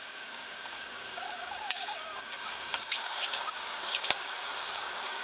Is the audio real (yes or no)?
no